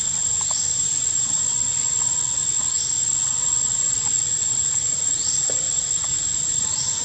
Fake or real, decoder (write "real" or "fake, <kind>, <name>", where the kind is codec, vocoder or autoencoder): real